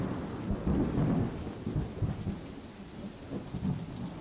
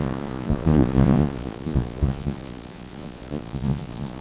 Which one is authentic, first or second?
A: first